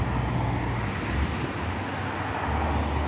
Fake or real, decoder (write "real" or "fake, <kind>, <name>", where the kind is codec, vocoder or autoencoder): real